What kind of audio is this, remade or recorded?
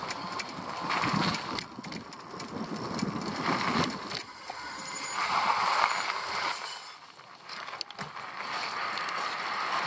recorded